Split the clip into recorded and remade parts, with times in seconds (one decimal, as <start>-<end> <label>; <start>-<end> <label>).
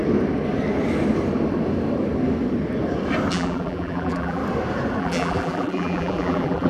0.0-3.3 recorded; 3.3-4.4 remade; 4.4-5.0 recorded; 5.0-6.7 remade